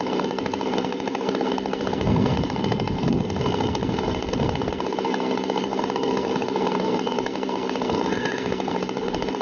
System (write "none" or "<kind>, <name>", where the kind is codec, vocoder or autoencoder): codec, SNAC